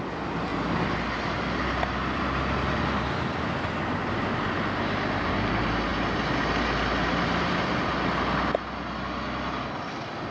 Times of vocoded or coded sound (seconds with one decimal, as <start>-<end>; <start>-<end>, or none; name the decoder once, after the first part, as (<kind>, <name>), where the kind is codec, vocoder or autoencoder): none